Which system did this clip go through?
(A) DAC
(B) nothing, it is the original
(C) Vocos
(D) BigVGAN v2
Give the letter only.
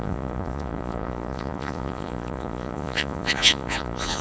C